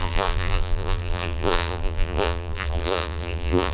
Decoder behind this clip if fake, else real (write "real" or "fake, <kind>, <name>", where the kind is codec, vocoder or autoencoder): fake, vocoder, BigVGAN v2